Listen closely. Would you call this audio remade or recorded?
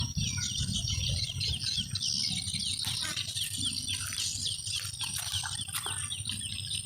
recorded